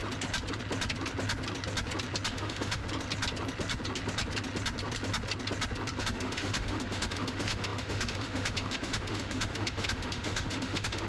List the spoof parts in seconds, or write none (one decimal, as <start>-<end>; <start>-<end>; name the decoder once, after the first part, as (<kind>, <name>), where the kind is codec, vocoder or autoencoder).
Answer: 2.3-2.8 (autoencoder, DAC-VAE); 6.0-11.1